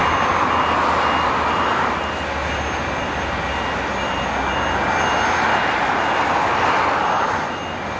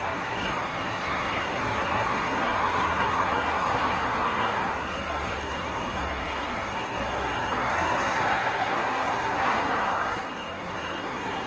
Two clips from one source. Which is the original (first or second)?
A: first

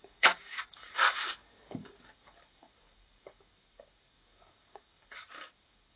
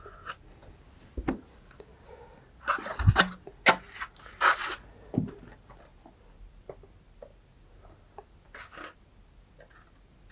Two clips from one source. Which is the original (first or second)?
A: second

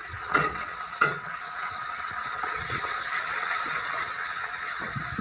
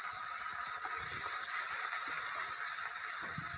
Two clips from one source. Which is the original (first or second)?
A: second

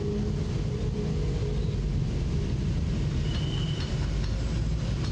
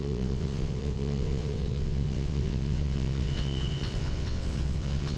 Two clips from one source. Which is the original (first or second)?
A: first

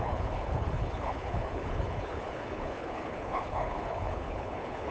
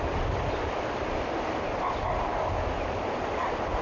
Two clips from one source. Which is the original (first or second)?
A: second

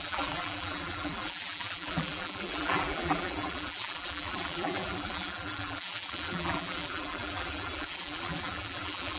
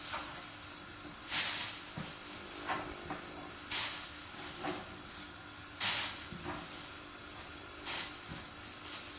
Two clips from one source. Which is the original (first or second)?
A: second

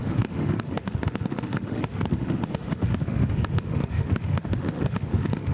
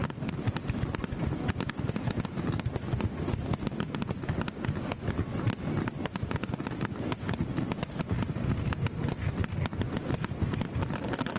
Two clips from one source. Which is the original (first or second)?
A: second